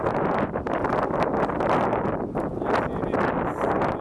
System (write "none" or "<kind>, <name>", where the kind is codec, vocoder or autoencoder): none